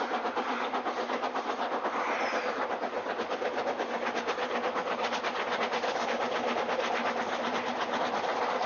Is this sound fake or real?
real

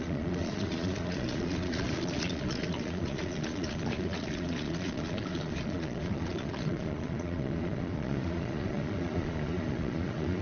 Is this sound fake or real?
fake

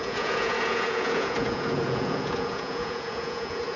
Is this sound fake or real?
fake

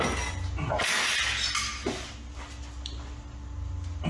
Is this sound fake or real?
real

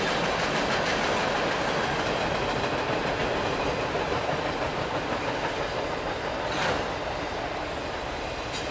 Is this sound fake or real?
real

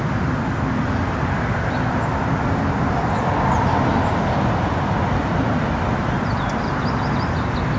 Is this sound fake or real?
real